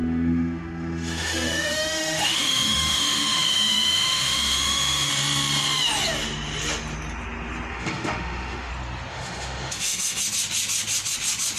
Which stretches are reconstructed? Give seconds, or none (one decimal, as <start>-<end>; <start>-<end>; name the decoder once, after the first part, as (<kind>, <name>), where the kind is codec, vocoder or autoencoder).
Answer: 0.0-5.1 (autoencoder, DAC-VAE); 7.7-8.7; 9.1-10.2